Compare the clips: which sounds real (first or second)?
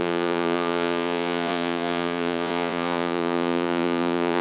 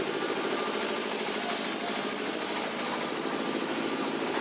second